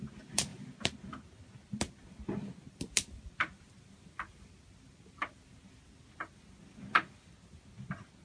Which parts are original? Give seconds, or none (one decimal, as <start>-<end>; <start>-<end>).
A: 0.0-8.2